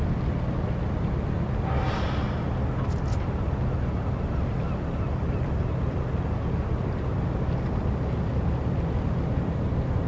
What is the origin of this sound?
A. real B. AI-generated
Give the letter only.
A